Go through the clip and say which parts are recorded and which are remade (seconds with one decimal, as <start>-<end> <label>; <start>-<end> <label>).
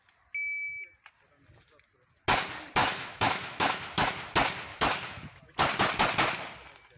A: 0.0-2.8 recorded; 2.8-4.1 remade; 4.1-4.7 recorded; 4.7-5.4 remade; 5.4-7.0 recorded